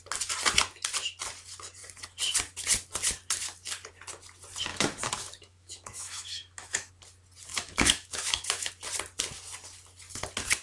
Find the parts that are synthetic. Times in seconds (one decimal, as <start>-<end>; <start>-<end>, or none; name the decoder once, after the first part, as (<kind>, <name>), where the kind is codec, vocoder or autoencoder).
4.7-6.9 (autoencoder, DAC-VAE); 7.5-8.7